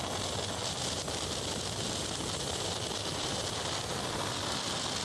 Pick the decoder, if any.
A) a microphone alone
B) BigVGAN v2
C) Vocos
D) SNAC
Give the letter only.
A